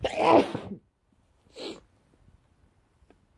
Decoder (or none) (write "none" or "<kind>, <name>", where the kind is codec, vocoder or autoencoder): none